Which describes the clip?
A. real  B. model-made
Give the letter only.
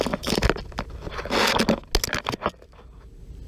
A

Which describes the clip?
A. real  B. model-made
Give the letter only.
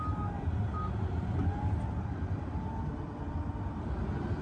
A